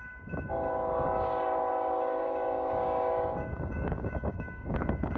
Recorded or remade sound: remade